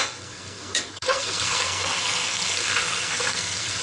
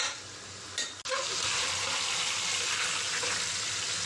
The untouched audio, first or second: second